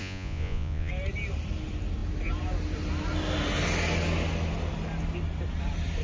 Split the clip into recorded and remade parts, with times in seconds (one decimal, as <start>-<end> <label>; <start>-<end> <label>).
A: 0.0-0.9 remade; 0.9-6.0 recorded